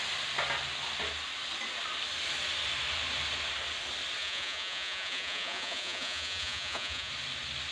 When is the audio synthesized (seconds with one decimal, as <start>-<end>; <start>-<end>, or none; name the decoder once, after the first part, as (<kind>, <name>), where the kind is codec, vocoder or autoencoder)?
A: 4.2-7.1 (vocoder, Vocos)

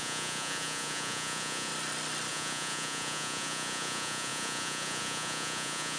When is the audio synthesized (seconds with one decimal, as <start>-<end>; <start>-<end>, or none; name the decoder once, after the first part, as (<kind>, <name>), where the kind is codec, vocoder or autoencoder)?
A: 0.0-1.7 (vocoder, Vocos); 2.3-6.0